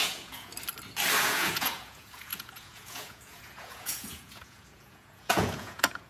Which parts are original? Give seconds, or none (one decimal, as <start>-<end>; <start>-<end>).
0.5-1.2